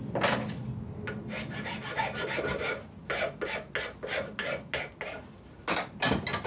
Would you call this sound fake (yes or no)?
no